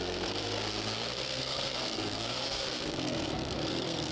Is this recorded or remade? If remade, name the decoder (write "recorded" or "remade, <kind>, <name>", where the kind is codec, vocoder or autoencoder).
remade, codec, SNAC